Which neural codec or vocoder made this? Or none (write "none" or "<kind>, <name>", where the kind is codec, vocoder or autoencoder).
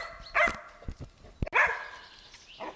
none